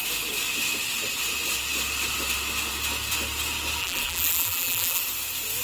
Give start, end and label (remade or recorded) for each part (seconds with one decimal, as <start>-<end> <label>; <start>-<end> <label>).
0.0-3.8 recorded; 3.8-5.0 remade; 5.0-5.6 recorded